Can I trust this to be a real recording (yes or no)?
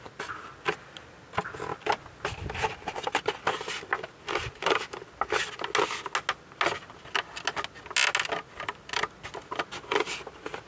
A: yes